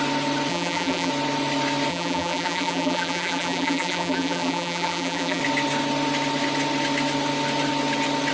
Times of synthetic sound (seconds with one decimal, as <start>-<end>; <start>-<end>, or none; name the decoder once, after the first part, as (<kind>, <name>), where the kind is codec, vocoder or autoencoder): 0.5-1.1 (vocoder, BigVGAN v2); 1.9-5.4